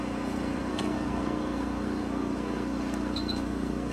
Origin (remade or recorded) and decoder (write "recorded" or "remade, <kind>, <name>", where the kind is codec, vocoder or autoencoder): remade, codec, SNAC